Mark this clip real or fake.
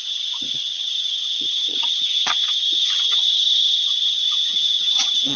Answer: fake